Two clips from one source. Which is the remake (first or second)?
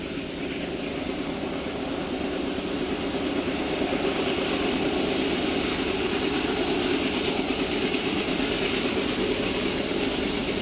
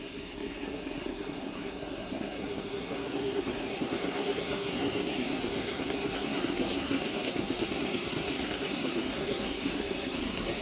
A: second